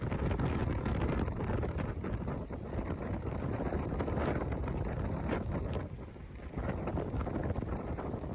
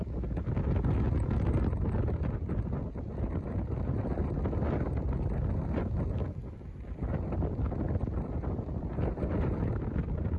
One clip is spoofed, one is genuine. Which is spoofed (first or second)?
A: first